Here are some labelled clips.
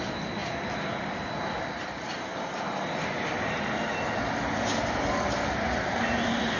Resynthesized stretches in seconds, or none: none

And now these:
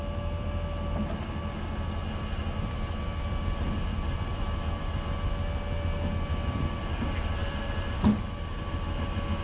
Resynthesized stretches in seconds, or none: none

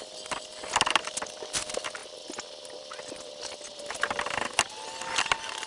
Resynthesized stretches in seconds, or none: none

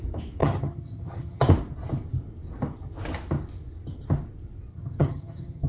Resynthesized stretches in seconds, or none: 0.4-1.4 (vocoder, HiFi-GAN); 4.7-5.7

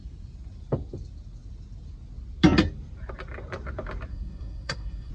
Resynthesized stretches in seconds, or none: 4.1-5.1 (codec, SNAC)